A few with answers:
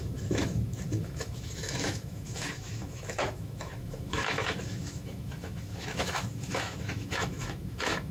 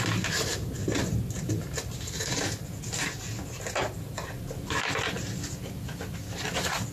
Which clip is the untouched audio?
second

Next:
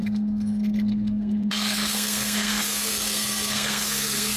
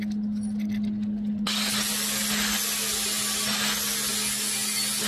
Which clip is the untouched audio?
second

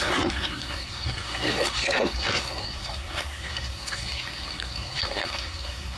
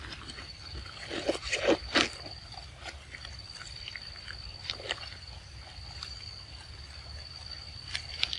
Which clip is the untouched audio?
second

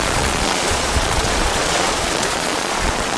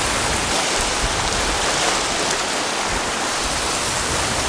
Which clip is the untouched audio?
second